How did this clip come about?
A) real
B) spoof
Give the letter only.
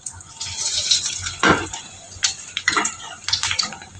B